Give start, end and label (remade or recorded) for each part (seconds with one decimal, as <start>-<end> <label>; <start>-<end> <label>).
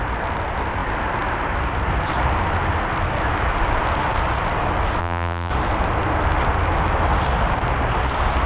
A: 0.0-5.0 recorded; 5.0-5.5 remade; 5.5-8.5 recorded